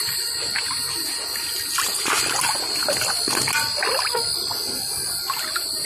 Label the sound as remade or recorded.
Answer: recorded